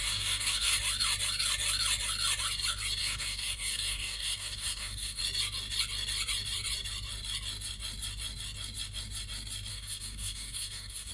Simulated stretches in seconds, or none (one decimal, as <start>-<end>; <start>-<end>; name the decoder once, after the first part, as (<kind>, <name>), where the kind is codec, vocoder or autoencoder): 0.0-0.8 (codec, DAC); 3.0-5.2; 9.7-11.1